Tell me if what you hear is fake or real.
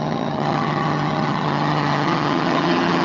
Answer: fake